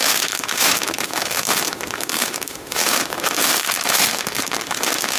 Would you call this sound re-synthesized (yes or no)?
yes